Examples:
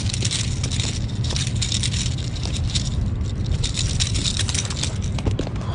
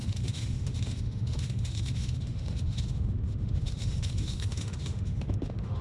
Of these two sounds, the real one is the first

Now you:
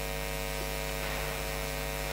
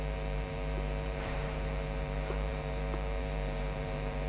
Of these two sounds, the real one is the first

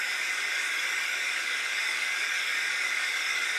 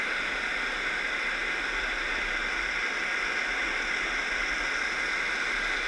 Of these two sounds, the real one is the second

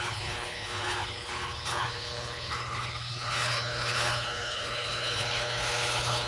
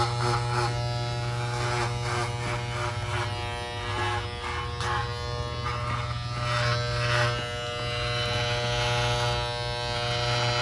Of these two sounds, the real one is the second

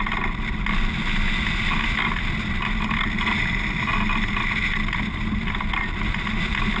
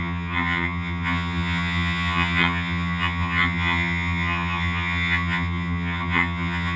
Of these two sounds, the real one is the first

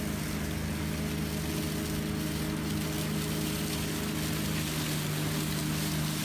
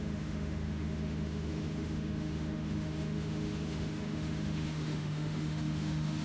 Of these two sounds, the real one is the first